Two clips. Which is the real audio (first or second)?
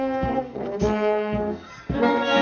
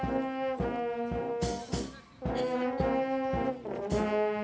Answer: second